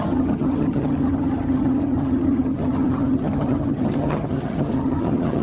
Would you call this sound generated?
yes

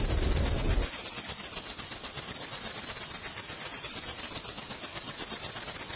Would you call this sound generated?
no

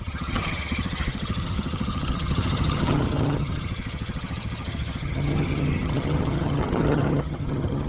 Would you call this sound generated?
yes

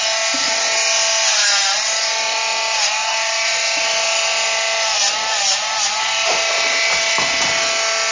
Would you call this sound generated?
no